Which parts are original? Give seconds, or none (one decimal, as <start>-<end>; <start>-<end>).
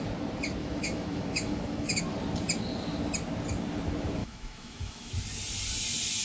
0.0-0.6; 2.0-4.2; 5.1-6.2